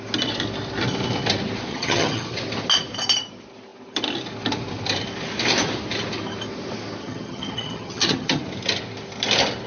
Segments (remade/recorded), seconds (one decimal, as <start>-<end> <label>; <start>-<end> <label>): 0.0-1.7 recorded; 1.7-2.4 remade; 2.4-7.0 recorded; 7.0-8.4 remade; 8.4-9.7 recorded